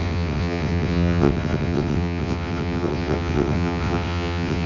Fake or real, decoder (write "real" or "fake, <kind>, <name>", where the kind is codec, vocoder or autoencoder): fake, vocoder, WaveNeXt